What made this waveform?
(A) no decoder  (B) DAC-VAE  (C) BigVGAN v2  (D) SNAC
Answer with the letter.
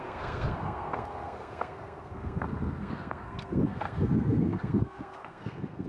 D